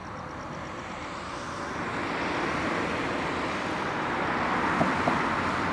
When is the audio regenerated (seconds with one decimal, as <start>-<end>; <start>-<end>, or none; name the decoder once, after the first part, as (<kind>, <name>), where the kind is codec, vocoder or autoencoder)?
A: none